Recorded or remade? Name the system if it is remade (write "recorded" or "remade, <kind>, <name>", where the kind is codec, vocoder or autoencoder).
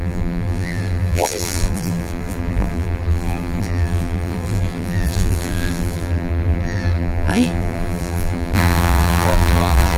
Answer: remade, vocoder, BigVGAN v2